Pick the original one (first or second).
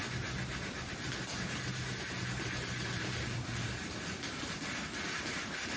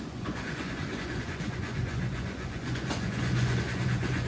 first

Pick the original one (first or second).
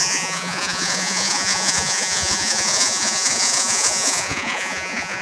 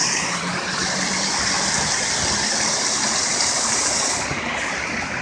second